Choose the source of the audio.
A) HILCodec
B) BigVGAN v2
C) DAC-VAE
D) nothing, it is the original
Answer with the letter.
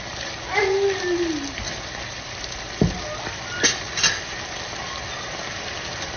D